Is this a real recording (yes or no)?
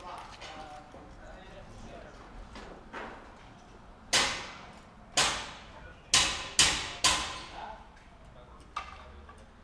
yes